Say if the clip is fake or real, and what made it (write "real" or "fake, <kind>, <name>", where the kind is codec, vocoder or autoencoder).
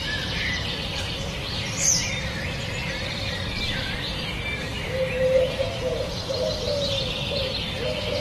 fake, vocoder, BigVGAN v2